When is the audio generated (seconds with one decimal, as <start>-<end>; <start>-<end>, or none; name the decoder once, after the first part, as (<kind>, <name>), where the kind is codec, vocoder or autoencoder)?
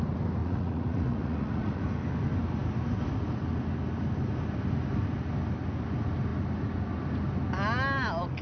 0.4-1.8 (vocoder, Vocos)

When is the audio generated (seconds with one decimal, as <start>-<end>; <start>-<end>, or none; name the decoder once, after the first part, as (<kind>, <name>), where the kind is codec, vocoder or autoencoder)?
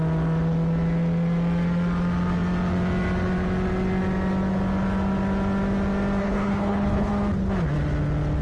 6.2-7.1 (codec, HILCodec)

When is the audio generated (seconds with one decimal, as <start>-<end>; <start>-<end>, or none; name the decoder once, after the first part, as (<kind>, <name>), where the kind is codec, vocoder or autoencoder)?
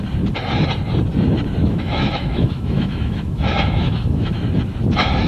1.6-4.4 (autoencoder, DAC-VAE)